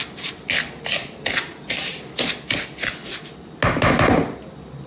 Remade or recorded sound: recorded